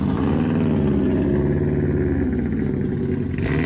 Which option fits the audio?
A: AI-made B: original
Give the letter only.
B